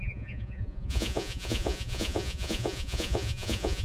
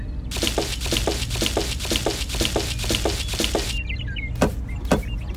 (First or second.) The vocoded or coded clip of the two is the first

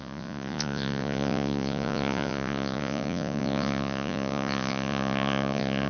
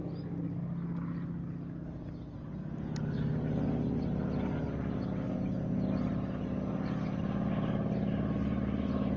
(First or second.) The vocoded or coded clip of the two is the first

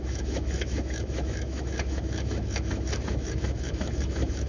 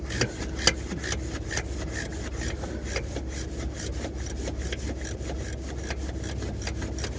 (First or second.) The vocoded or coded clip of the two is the first